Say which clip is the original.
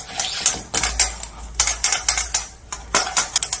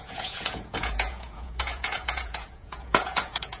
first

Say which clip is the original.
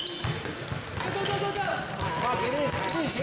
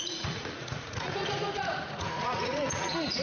first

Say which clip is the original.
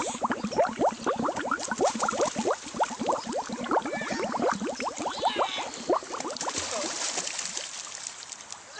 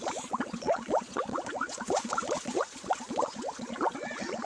first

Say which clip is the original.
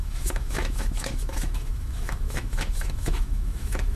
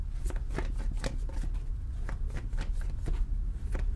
second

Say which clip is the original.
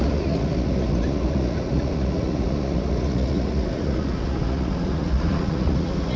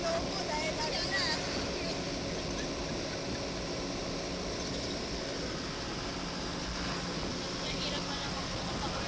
second